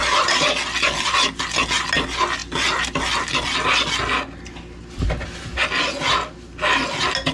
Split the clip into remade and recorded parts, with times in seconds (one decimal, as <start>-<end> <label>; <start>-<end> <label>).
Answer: 0.0-7.3 recorded